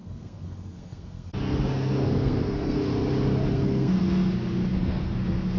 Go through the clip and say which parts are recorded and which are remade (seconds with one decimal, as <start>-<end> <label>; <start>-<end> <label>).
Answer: 0.0-2.9 remade; 2.9-3.5 recorded; 3.5-4.3 remade; 4.3-4.7 recorded; 4.7-5.6 remade